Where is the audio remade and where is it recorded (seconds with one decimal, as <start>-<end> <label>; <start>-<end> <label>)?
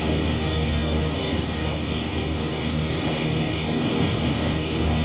0.0-5.0 remade